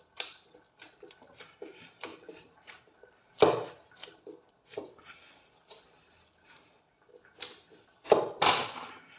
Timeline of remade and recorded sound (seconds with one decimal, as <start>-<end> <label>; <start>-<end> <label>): 0.0-9.2 recorded